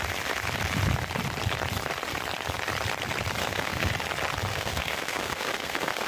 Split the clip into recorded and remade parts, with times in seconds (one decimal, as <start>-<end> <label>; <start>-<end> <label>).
0.0-3.4 recorded; 3.4-3.9 remade; 3.9-4.5 recorded; 4.5-6.1 remade